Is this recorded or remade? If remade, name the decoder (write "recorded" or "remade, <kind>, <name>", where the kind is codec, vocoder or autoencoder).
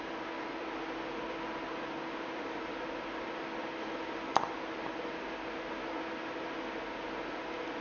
recorded